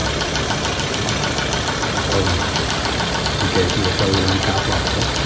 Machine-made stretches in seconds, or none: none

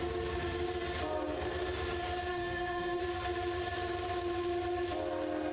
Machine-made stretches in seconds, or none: 2.3-3.0 (autoencoder, DAC-VAE)

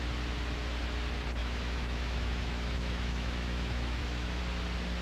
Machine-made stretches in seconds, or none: 1.4-4.4 (autoencoder, DAC-VAE)

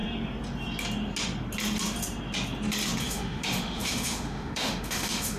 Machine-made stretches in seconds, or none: 3.0-5.4 (autoencoder, DAC-VAE)

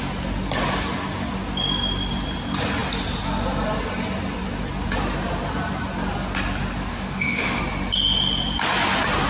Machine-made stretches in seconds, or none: 6.9-7.6 (autoencoder, DAC-VAE)

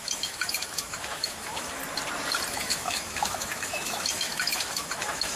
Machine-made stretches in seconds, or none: 0.0-1.8 (autoencoder, DAC-VAE); 2.5-5.4

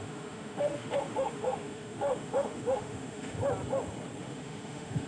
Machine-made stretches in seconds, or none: 0.0-3.4 (autoencoder, DAC-VAE); 4.2-5.1